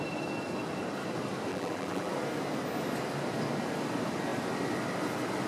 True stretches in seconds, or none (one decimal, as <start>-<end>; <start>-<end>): 0.0-1.5; 2.1-5.5

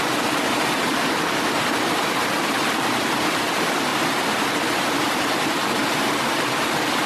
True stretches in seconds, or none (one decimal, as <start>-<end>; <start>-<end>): 0.0-2.2; 2.9-3.9; 4.4-5.8; 6.5-7.1

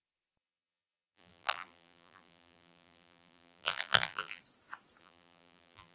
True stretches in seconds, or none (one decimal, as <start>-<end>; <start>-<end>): 4.4-5.0

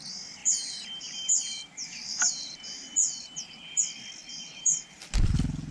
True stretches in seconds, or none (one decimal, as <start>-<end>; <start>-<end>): 0.0-0.4; 3.8-4.2; 5.0-5.7